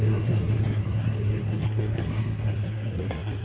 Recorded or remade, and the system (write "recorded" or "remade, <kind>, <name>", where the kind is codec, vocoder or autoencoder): remade, codec, SNAC